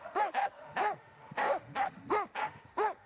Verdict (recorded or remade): remade